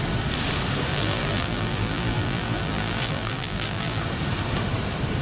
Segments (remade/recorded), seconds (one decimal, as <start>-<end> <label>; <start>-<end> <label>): 0.0-0.9 recorded; 0.9-4.0 remade; 4.0-5.2 recorded